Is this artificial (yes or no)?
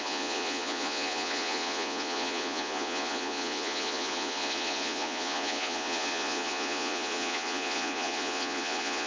yes